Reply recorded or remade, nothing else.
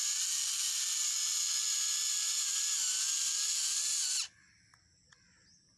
recorded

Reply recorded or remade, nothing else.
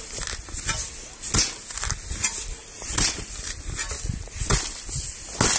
recorded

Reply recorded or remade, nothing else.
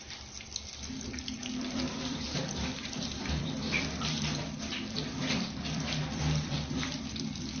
remade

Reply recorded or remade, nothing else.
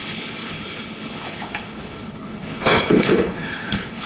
remade